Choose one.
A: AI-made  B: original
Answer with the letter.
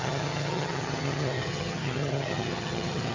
A